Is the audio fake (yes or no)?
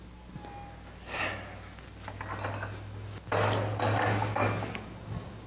no